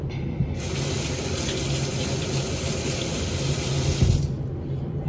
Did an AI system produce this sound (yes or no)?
no